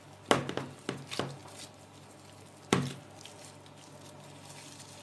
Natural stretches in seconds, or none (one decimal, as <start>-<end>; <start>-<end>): 0.0-1.4; 3.0-5.0